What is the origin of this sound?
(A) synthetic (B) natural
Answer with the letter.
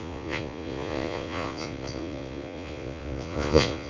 A